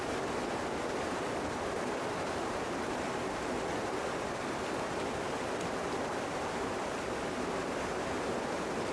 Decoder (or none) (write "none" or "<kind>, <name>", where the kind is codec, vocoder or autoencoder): none